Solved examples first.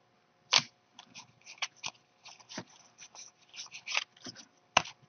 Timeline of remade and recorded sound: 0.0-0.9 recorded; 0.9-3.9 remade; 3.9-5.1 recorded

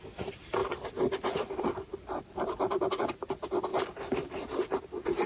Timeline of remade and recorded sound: 0.0-0.6 recorded; 0.6-3.3 remade; 3.3-3.7 recorded; 3.7-4.8 remade; 4.8-5.3 recorded

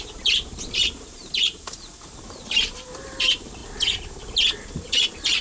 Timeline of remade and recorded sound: 0.0-3.6 remade; 3.6-5.4 recorded

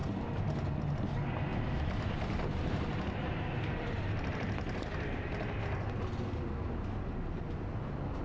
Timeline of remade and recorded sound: 0.0-1.5 recorded; 1.5-5.6 remade; 5.6-8.2 recorded

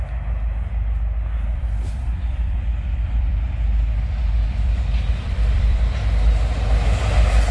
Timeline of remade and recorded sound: 0.0-1.3 recorded; 1.3-5.8 remade; 5.8-7.5 recorded